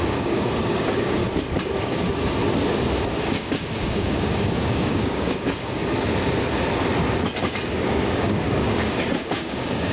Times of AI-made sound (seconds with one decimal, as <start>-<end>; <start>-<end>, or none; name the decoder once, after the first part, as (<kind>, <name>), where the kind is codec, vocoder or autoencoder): 0.0-1.2 (codec, DAC); 1.8-2.2; 3.1-5.8; 7.7-9.9